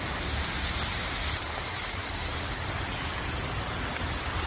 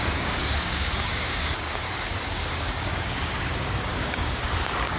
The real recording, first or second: first